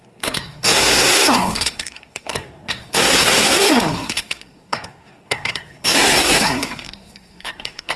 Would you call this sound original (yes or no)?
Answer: no